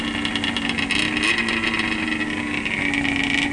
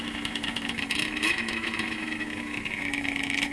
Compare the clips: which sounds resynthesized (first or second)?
second